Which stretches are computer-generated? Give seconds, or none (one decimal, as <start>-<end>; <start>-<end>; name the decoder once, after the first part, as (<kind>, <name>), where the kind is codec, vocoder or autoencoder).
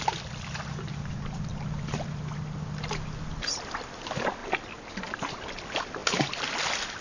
none